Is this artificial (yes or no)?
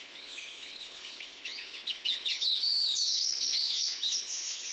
yes